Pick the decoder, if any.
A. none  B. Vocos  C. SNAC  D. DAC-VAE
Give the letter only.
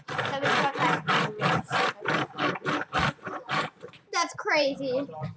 A